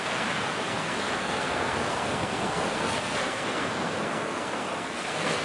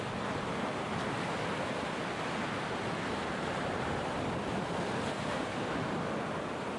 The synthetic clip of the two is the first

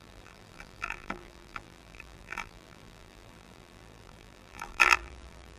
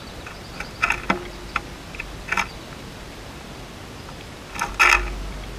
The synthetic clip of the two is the first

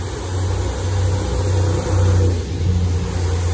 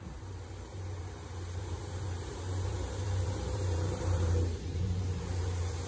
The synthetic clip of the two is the second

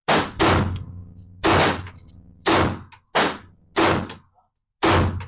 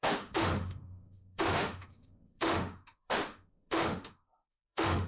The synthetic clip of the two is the second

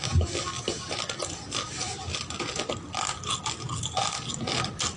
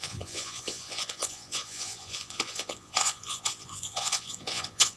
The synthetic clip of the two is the second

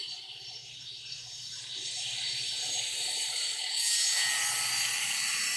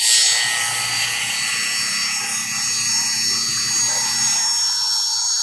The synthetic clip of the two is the first